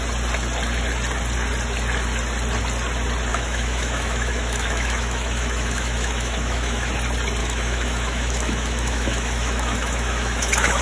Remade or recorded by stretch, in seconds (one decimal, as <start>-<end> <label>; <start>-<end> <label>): 0.0-3.3 recorded; 3.3-6.9 remade; 6.9-7.4 recorded; 7.4-10.8 remade